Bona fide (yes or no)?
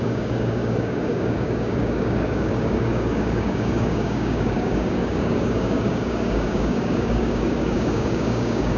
no